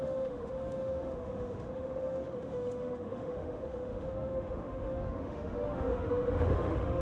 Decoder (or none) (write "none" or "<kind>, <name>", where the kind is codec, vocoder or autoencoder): autoencoder, DAC-VAE